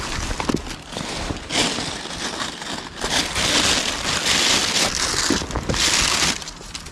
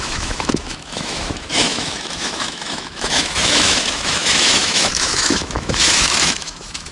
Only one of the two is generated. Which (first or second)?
second